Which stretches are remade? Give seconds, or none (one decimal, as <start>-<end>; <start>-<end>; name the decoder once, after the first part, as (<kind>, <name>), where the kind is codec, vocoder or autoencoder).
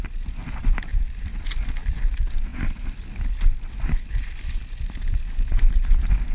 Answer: none